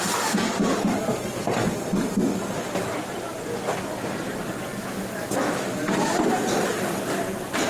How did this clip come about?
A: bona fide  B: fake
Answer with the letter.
B